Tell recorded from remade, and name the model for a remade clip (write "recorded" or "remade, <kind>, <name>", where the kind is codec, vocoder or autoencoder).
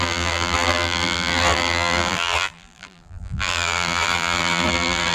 remade, vocoder, BigVGAN v2